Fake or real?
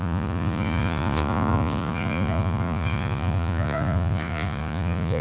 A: fake